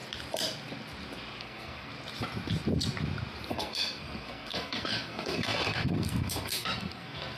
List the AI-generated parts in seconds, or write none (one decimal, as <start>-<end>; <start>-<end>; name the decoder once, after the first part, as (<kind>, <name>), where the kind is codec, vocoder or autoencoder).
1.4-1.9 (codec, SNAC); 3.5-7.4